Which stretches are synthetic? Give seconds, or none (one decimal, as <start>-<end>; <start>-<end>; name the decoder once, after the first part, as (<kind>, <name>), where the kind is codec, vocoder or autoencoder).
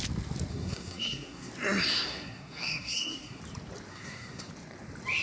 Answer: 0.5-1.5 (codec, SNAC); 1.9-3.4; 3.9-4.5